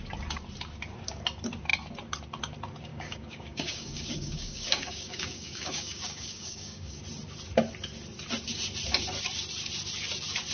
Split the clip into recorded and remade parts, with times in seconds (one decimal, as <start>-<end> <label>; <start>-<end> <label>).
0.0-2.9 recorded; 2.9-7.0 remade; 7.0-10.5 recorded